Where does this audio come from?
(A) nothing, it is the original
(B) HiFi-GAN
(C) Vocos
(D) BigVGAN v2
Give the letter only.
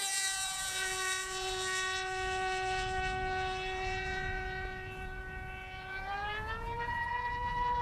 C